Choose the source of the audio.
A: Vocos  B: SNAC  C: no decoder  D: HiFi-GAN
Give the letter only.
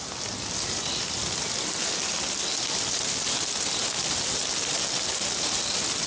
C